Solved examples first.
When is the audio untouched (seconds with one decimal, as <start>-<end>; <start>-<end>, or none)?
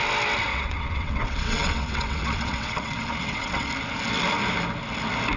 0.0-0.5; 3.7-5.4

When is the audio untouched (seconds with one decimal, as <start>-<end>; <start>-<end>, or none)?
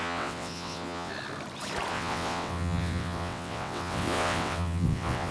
1.1-1.9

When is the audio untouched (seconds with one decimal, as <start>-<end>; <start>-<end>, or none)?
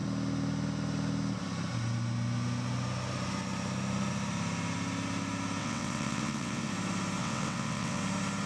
0.0-5.6; 6.7-7.2; 8.0-8.5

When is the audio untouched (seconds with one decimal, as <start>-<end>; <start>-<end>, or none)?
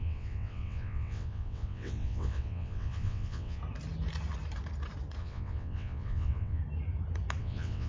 3.6-5.2; 6.6-7.4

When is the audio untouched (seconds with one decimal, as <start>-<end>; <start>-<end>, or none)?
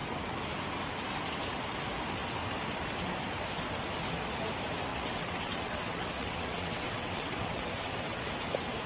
0.0-4.9; 8.2-8.9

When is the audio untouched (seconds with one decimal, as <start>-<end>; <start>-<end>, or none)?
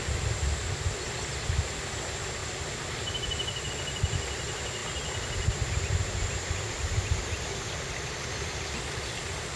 0.0-9.6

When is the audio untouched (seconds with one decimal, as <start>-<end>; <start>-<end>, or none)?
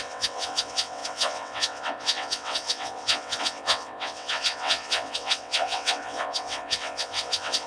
none